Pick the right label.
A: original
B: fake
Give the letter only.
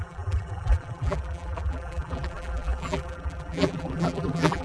B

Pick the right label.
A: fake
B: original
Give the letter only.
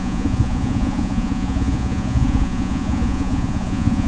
A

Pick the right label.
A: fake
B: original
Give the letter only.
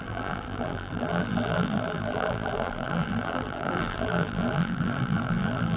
A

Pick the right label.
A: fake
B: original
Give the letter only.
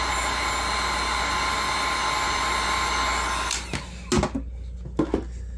B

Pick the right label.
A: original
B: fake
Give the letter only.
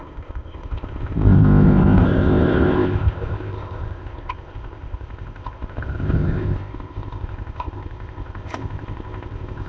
B